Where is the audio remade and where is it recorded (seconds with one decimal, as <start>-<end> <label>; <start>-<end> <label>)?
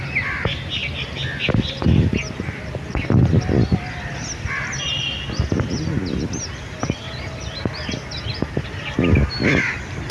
0.0-10.1 recorded